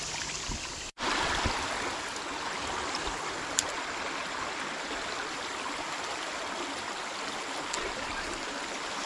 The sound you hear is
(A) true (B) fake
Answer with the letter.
A